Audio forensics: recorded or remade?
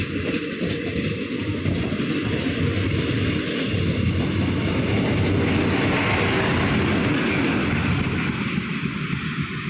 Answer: recorded